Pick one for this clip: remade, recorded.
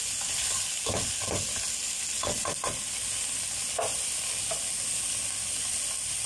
recorded